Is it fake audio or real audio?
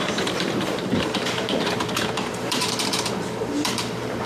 fake